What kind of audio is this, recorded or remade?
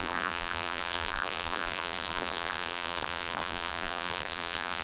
remade